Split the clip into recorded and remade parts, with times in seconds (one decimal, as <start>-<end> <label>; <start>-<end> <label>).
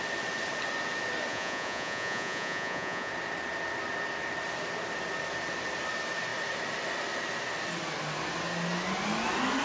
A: 0.0-1.3 recorded; 1.3-3.1 remade; 3.1-9.6 recorded